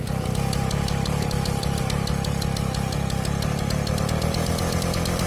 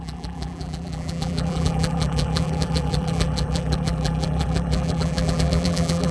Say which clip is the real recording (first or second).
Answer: first